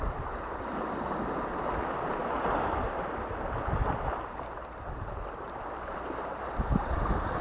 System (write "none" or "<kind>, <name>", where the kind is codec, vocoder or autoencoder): none